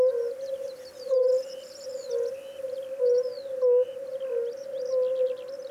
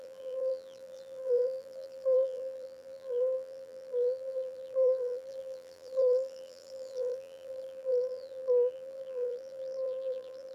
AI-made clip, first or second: second